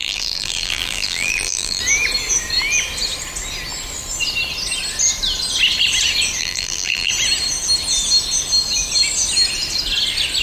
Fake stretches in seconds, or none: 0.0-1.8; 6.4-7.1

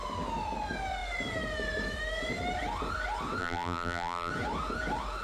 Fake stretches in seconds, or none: 3.4-4.3